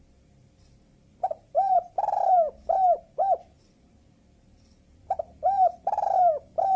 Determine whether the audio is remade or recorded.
remade